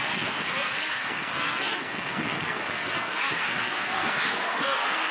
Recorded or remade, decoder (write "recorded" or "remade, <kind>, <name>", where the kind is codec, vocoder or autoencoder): remade, codec, SNAC